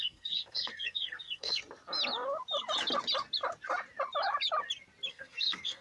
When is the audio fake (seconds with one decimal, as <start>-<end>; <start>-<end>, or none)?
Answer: 0.0-1.6; 5.1-5.8